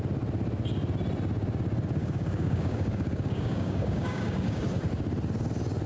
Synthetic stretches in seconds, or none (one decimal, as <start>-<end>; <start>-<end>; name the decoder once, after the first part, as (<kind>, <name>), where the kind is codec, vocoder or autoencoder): 2.0-4.6 (codec, DAC)